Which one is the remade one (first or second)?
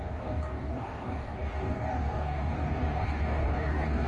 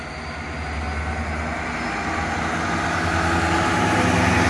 first